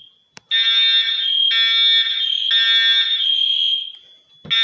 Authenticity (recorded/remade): recorded